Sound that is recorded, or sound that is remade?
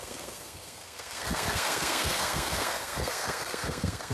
remade